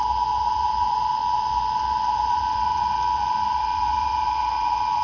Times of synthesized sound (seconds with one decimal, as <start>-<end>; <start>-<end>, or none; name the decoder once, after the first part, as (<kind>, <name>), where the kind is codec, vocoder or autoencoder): 0.0-5.0 (vocoder, Vocos)

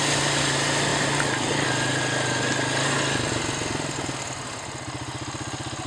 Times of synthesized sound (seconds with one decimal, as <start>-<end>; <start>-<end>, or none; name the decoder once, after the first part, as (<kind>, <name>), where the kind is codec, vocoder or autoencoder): none